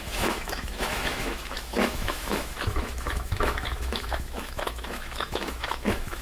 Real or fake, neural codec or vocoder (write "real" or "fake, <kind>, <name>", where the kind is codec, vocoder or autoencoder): fake, autoencoder, DAC-VAE